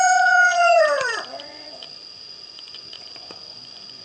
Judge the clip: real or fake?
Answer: fake